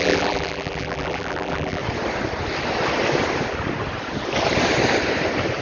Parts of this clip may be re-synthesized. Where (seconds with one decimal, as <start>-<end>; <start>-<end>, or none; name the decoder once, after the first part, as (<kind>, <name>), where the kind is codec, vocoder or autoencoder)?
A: 0.0-1.8 (vocoder, BigVGAN v2)